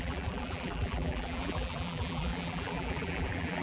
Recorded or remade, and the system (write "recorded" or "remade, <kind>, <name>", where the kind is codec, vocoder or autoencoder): remade, vocoder, BigVGAN v2